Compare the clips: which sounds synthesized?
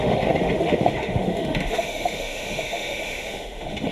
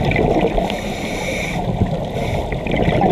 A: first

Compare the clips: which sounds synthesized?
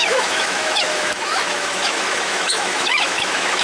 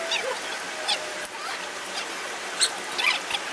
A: first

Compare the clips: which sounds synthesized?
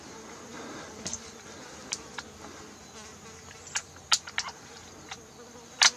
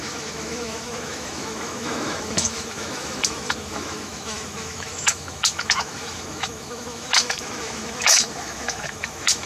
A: second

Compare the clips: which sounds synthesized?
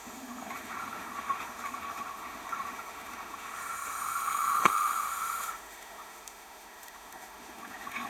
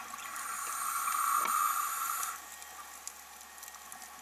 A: first